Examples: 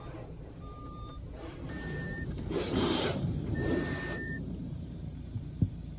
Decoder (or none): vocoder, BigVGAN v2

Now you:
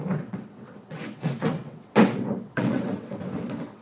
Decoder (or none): vocoder, WaveNeXt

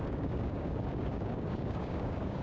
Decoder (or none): codec, DAC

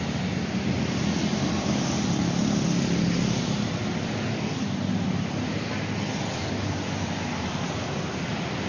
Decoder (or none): none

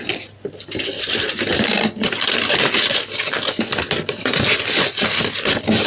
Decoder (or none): none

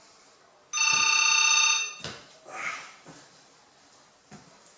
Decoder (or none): none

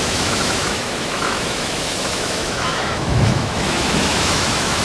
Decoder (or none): autoencoder, DAC-VAE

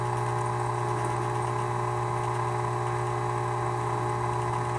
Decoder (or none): none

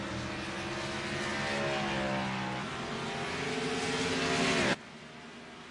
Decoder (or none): none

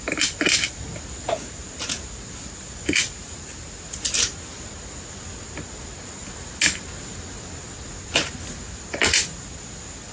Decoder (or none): none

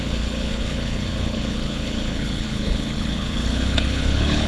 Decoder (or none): codec, HILCodec